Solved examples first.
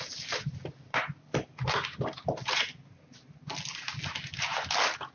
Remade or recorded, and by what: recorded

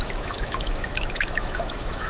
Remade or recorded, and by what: remade, autoencoder, DAC-VAE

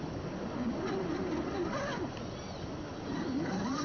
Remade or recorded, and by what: recorded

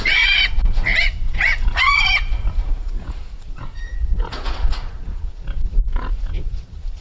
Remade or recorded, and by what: remade, vocoder, Vocos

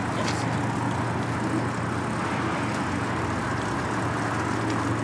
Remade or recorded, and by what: recorded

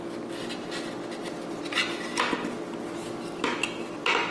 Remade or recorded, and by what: recorded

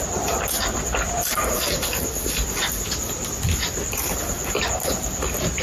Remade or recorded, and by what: recorded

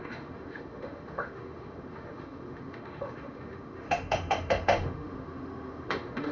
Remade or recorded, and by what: remade, autoencoder, DAC-VAE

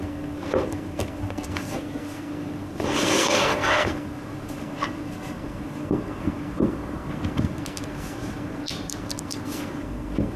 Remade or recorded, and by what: remade, codec, SNAC